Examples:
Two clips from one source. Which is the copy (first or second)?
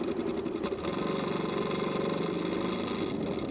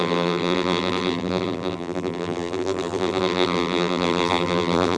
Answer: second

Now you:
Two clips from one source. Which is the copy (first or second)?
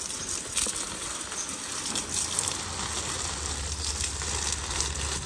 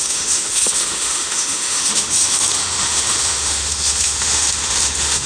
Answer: second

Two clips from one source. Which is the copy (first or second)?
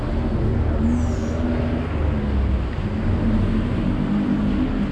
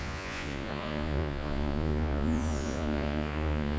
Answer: second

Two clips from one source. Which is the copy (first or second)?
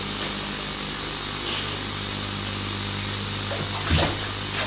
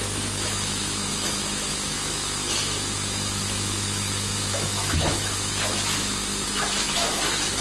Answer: second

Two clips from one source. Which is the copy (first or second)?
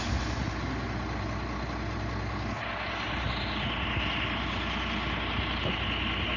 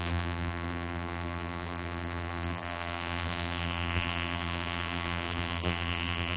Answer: second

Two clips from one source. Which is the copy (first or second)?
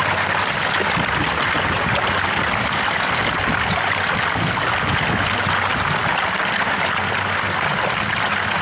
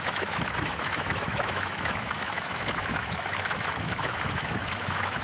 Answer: second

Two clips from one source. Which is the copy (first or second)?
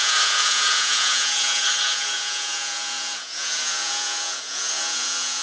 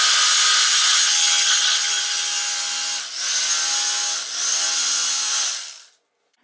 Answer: first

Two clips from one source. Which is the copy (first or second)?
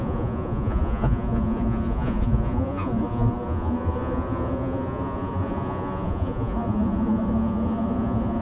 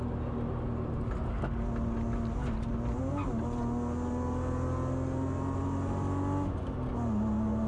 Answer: first